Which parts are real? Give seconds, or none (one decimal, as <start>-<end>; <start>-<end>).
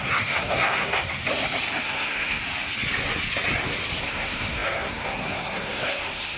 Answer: 1.2-1.8; 2.4-4.0